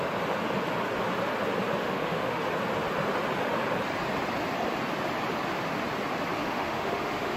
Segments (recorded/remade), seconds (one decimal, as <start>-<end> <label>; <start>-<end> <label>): 0.0-1.8 recorded; 1.8-2.4 remade; 2.4-6.4 recorded; 6.4-7.4 remade